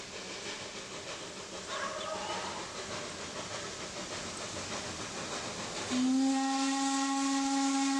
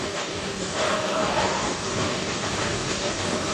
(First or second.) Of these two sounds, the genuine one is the first